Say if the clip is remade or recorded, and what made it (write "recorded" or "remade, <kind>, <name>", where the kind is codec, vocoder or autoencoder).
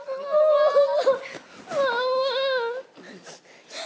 recorded